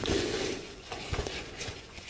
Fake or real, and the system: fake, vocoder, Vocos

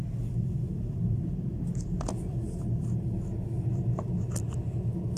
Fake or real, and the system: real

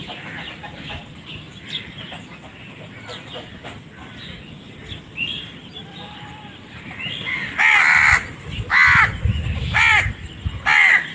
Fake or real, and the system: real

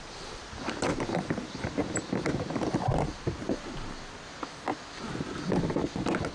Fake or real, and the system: real